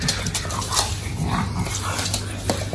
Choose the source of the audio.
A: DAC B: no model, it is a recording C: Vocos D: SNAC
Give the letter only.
B